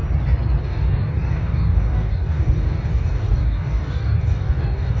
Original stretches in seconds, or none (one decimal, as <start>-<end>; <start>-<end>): 0.0-0.6

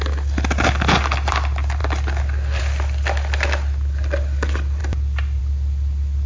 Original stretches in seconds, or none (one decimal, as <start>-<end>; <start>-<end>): 0.0-6.3

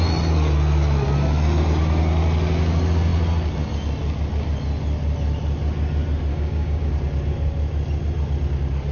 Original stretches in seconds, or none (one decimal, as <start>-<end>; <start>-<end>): 0.0-6.3; 6.9-8.9

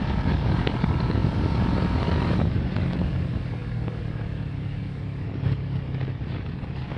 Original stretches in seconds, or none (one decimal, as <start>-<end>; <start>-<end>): none

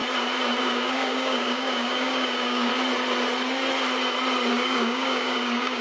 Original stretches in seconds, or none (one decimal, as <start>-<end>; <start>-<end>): 0.0-0.6; 2.7-4.5

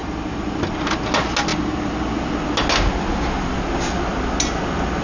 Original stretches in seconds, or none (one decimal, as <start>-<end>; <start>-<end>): 0.0-5.0

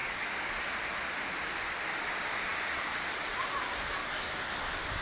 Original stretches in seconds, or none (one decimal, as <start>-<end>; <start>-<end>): 0.5-4.0; 4.5-5.0

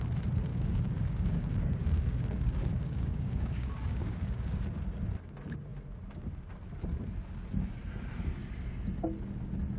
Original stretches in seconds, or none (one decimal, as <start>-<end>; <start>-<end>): 0.0-0.5; 4.6-9.8